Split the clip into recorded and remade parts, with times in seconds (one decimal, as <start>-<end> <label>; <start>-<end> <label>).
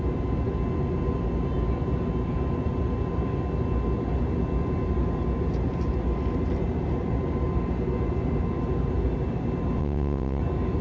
0.0-9.8 recorded; 9.8-10.4 remade; 10.4-10.8 recorded